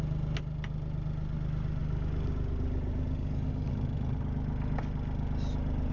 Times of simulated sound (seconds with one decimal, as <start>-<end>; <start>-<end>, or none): none